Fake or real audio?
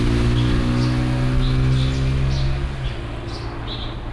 real